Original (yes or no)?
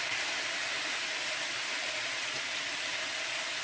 yes